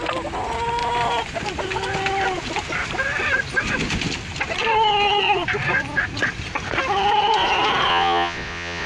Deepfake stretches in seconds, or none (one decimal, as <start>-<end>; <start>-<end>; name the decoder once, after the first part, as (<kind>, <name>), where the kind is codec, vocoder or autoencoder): 7.9-8.9 (vocoder, Vocos)